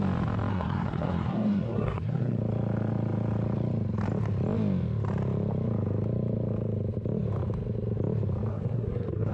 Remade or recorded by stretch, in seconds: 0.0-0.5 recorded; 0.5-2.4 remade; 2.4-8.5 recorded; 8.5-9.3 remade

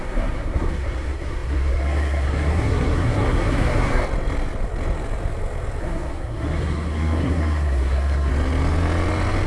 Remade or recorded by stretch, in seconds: 0.0-4.0 remade; 4.0-5.8 recorded; 5.8-8.3 remade; 8.3-9.5 recorded

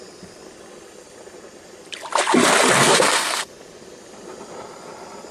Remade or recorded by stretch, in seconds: 0.0-2.8 recorded; 2.8-3.5 remade; 3.5-5.3 recorded

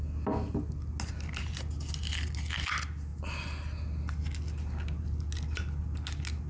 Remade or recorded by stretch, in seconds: 0.0-6.5 recorded

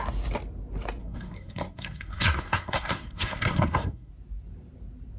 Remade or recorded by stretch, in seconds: 0.0-1.0 recorded; 1.0-4.1 remade; 4.1-5.2 recorded

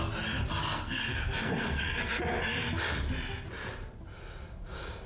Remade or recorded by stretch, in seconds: 0.0-0.6 recorded; 0.6-2.2 remade; 2.2-5.1 recorded

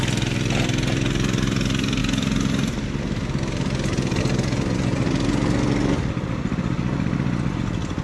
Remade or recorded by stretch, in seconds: 0.0-8.0 recorded